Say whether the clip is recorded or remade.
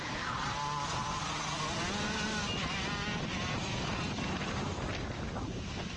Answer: recorded